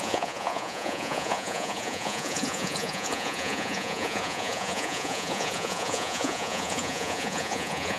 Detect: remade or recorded remade